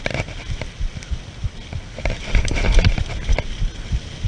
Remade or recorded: recorded